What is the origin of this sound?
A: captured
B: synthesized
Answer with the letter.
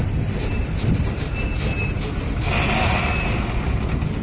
A